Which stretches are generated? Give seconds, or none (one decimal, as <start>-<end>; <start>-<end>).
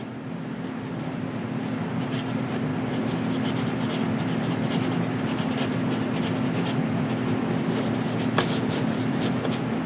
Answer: none